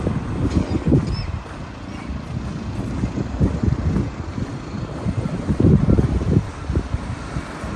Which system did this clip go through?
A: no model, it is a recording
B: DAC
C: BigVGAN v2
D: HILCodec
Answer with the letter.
C